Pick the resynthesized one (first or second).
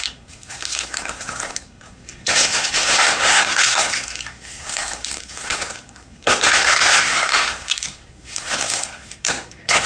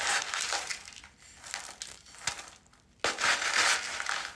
first